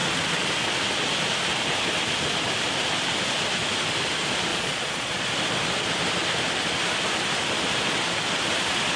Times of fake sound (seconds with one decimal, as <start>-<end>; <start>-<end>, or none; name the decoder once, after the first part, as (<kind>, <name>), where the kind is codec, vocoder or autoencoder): 4.5-5.2 (vocoder, Vocos)